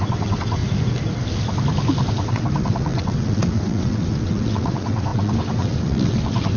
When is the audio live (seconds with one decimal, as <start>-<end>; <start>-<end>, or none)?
0.6-2.3